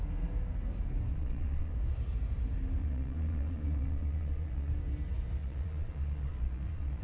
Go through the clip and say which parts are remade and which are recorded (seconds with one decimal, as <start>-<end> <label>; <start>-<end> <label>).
0.0-1.1 recorded; 1.1-1.7 remade; 1.7-2.8 recorded; 2.8-4.7 remade; 4.7-5.4 recorded; 5.4-7.0 remade